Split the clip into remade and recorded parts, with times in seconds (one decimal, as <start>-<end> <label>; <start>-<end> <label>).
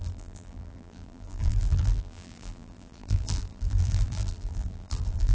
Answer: 0.0-5.3 remade